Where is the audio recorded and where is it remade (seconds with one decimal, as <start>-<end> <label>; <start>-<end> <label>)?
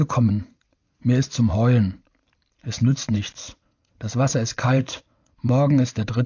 0.0-0.8 remade; 0.8-2.6 recorded; 2.6-6.3 remade